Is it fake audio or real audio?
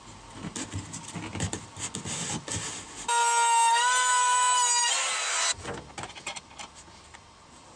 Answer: real